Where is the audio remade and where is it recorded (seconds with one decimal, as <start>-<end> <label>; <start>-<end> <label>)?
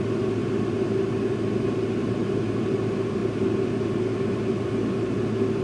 0.0-5.6 recorded